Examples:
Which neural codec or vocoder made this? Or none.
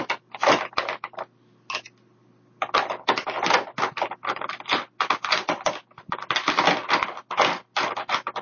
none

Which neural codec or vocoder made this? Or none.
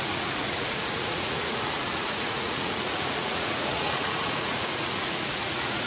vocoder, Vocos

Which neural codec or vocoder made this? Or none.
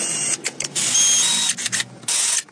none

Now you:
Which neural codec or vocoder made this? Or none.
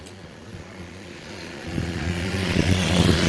vocoder, Vocos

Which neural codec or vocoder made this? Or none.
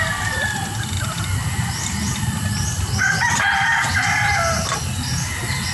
none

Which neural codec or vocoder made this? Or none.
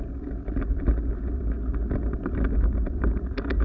none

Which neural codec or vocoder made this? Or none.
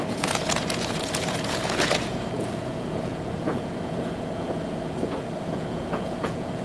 vocoder, Vocos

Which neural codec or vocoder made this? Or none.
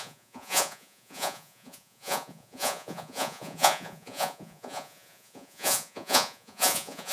vocoder, Vocos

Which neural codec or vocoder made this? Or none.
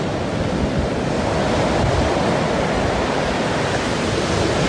none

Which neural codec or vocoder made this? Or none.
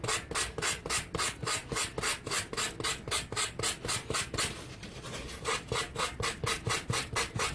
none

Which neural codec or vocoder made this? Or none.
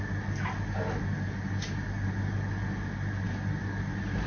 none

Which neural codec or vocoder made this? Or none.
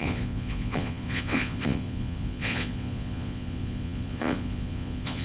vocoder, Vocos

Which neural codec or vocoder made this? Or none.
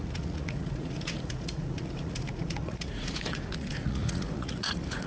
vocoder, Vocos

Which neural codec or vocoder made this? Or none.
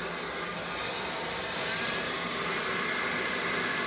none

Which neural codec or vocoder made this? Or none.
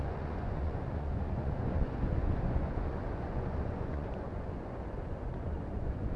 vocoder, Vocos